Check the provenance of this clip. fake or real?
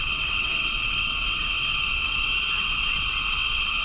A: fake